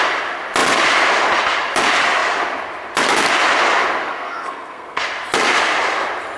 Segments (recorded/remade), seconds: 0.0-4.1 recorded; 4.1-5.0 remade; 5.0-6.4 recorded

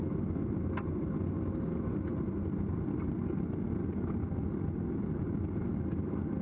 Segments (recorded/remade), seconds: 0.0-6.4 recorded

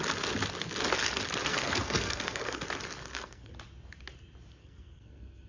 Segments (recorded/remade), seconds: 0.0-1.5 recorded; 1.5-2.6 remade; 2.6-3.0 recorded; 3.0-3.5 remade; 3.5-4.6 recorded; 4.6-5.5 remade